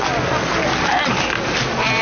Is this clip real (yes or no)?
yes